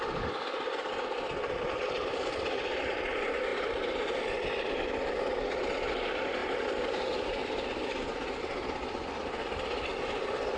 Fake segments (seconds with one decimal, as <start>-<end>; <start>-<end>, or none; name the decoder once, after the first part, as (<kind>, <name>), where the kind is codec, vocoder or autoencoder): none